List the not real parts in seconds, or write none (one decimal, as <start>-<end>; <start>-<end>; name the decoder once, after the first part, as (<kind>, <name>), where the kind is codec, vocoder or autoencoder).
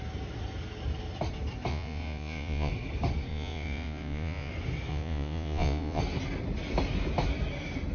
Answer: 1.7-2.7 (vocoder, Vocos); 3.3-4.5; 4.9-6.0